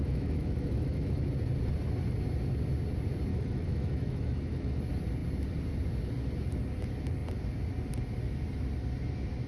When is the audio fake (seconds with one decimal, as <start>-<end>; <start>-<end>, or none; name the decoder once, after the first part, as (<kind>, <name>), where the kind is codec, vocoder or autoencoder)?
0.0-1.3 (autoencoder, DAC-VAE); 3.3-4.8